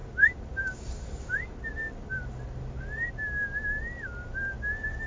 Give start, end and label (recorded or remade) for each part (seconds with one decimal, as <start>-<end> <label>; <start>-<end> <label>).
0.0-5.1 recorded